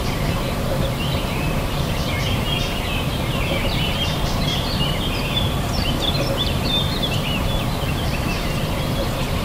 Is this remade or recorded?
remade